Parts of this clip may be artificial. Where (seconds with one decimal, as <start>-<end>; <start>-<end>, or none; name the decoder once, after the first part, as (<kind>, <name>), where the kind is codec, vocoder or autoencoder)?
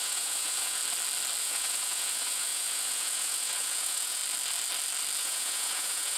0.0-0.8 (vocoder, Vocos); 1.4-4.2; 5.2-6.2